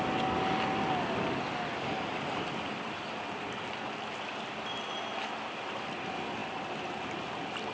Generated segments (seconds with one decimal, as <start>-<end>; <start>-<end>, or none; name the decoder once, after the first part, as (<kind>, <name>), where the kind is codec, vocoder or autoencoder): none